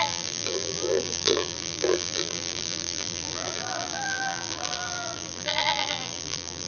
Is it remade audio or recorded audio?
remade